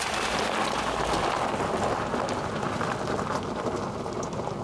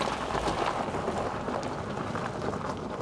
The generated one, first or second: second